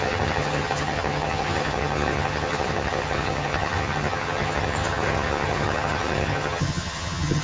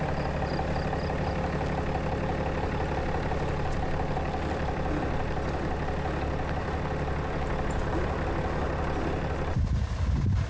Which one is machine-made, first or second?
first